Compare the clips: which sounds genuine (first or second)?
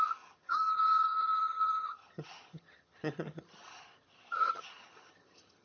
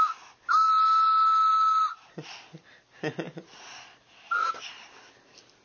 second